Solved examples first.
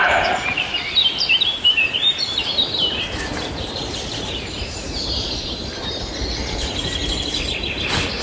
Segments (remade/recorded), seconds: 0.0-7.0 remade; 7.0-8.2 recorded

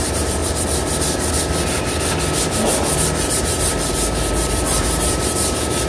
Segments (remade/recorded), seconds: 0.0-0.4 remade; 0.4-3.4 recorded; 3.4-5.9 remade